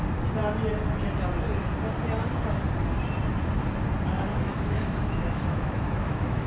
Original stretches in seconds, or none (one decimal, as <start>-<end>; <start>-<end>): 0.0-4.3